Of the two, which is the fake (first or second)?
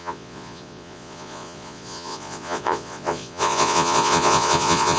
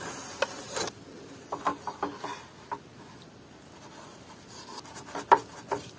first